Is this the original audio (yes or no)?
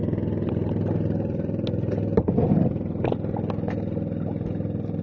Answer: yes